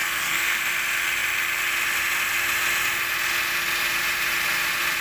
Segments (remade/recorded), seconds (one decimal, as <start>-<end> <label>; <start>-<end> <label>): 0.0-0.6 remade; 0.6-5.0 recorded